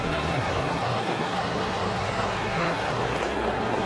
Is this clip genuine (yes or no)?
no